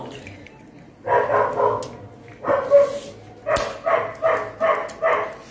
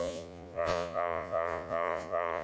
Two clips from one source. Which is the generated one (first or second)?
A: second